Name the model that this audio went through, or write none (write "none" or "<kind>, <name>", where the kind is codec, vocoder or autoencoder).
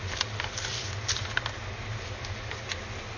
none